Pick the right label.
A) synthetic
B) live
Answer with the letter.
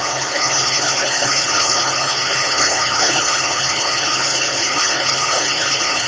A